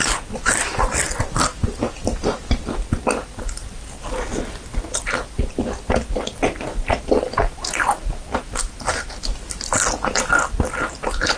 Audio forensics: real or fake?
real